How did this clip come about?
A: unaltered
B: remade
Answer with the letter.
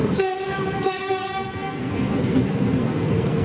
B